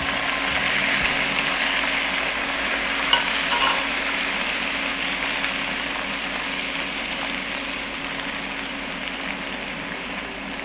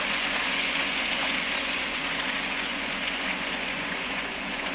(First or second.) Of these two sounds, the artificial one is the second